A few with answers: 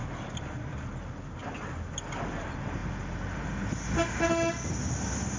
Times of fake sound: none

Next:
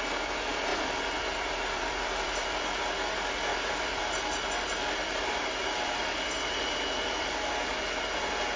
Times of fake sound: 0.7-2.8 (vocoder, BigVGAN v2); 3.5-4.1; 5.0-8.0

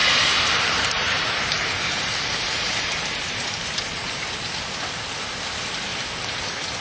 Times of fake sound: 0.0-3.8 (vocoder, BigVGAN v2)

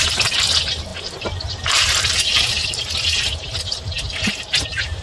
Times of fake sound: 0.0-5.0 (vocoder, BigVGAN v2)